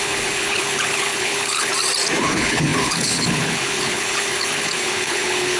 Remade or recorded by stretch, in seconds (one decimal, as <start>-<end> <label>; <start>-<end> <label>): 0.0-1.7 remade; 1.7-2.2 recorded; 2.2-5.6 remade